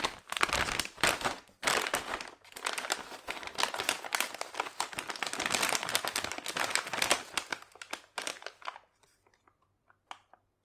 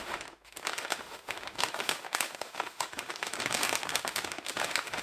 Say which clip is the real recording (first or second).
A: first